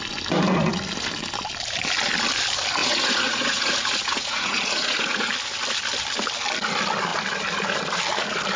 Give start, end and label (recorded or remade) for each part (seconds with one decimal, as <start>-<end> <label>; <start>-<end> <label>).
0.0-2.8 recorded; 2.8-5.3 remade; 5.3-8.6 recorded